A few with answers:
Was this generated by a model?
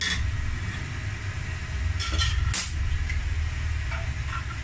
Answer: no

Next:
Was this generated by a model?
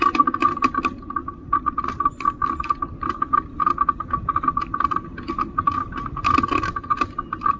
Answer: no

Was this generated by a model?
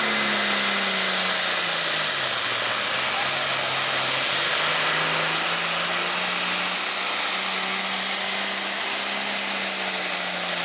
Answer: no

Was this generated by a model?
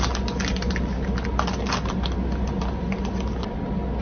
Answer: no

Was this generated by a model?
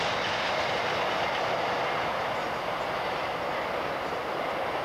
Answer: no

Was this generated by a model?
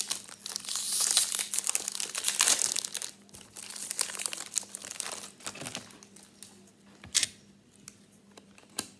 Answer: no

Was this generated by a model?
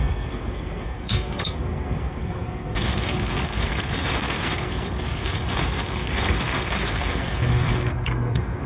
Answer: yes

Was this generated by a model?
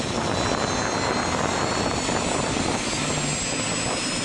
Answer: no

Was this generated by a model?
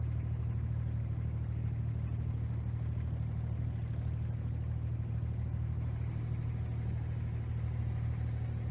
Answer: no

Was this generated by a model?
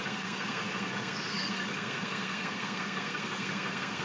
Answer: yes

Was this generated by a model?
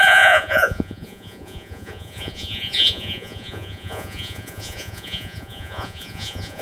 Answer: yes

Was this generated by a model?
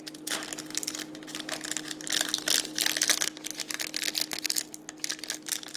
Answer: no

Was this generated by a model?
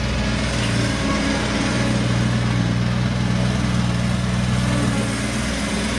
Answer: no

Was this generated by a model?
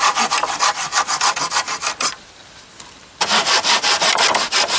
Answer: no